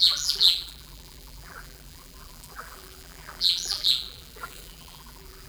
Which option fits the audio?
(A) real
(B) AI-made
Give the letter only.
B